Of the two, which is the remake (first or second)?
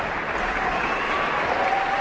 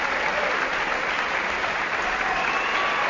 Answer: first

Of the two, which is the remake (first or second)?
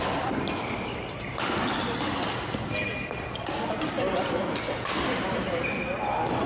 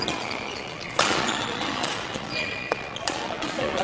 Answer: second